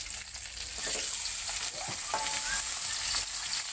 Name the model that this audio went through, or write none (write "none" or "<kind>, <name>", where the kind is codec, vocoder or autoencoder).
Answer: none